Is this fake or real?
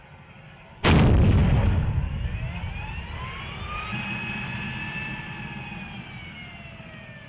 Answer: real